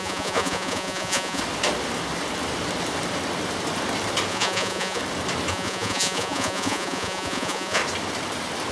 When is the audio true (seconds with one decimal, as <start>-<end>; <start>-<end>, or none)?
1.4-4.3; 5.0-5.5; 7.8-8.7